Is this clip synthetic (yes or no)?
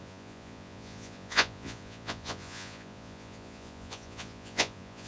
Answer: yes